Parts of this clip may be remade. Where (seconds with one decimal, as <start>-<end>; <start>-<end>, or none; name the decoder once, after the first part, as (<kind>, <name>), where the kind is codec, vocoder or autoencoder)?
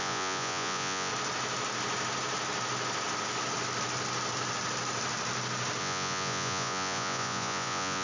0.0-1.1 (vocoder, Vocos); 5.8-8.0